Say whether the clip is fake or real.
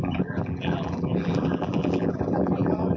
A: fake